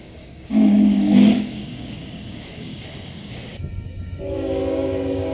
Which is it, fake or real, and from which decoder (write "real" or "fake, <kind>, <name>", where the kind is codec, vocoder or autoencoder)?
fake, codec, DAC